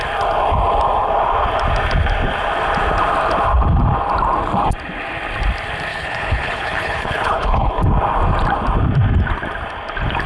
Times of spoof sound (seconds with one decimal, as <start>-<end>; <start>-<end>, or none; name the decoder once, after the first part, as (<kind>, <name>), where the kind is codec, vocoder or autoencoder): 5.9-7.7 (codec, HILCodec)